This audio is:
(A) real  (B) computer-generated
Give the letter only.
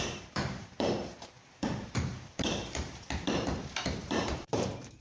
B